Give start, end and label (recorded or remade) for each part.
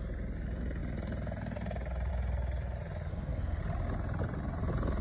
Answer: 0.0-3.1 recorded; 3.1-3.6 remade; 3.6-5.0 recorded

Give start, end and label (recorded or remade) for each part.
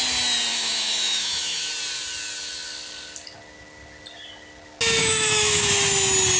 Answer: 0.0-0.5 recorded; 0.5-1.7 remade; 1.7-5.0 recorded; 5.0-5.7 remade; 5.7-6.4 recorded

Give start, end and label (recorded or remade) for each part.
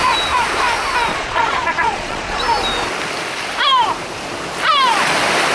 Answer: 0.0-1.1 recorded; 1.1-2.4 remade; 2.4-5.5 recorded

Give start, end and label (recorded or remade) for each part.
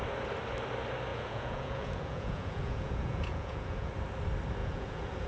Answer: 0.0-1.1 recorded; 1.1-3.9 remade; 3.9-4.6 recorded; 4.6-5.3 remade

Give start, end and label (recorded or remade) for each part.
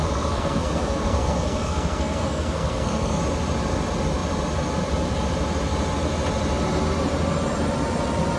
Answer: 0.0-3.2 remade; 3.2-8.4 recorded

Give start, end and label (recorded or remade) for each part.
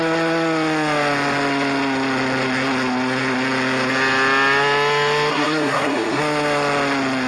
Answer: 0.0-5.3 recorded; 5.3-6.2 remade; 6.2-7.3 recorded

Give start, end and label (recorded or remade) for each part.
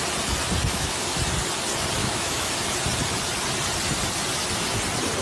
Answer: 0.0-0.7 recorded; 0.7-1.2 remade; 1.2-2.0 recorded; 2.0-2.5 remade; 2.5-5.2 recorded